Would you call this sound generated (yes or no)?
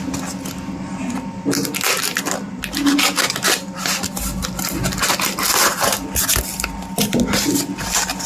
no